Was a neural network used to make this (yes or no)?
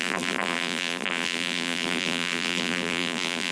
yes